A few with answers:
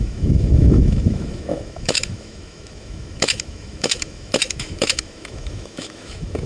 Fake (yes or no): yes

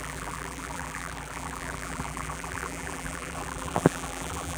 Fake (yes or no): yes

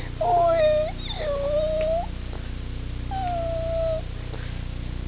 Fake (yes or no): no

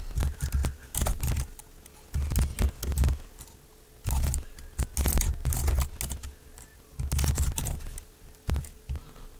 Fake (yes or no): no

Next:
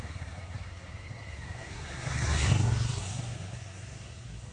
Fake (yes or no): yes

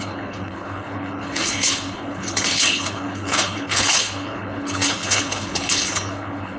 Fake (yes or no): yes